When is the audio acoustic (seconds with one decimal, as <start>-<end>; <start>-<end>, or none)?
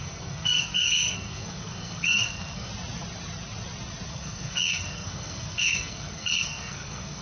2.7-4.1